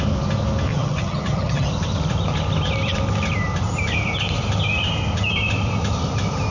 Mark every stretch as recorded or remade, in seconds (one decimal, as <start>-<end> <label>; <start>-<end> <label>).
0.0-0.7 recorded; 0.7-1.7 remade; 1.7-6.5 recorded